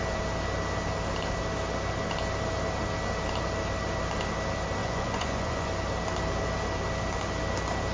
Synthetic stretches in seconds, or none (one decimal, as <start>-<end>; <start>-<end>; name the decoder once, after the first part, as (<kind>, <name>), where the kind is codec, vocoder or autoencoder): 4.8-5.7 (vocoder, Vocos)